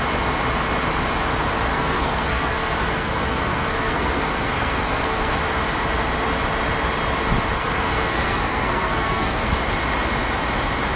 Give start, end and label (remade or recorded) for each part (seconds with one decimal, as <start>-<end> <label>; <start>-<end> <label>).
0.0-1.7 recorded; 1.7-5.4 remade; 5.4-7.5 recorded; 7.5-9.5 remade; 9.5-11.0 recorded